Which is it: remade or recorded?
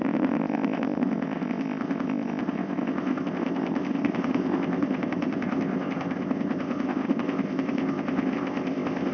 remade